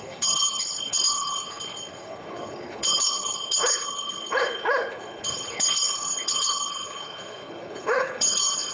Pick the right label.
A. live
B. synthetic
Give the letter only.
B